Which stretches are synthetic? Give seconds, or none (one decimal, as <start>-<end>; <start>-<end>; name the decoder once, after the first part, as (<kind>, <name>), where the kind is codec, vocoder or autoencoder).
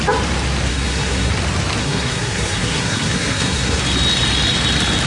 0.7-1.3 (codec, SNAC); 1.8-3.8